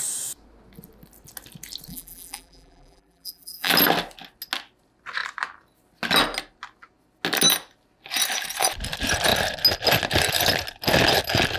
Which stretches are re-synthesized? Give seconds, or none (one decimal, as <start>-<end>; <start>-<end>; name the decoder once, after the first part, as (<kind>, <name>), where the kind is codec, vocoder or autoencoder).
1.9-3.7 (vocoder, BigVGAN v2)